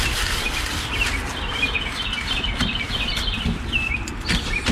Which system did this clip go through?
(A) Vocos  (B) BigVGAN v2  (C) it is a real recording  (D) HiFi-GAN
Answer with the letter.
C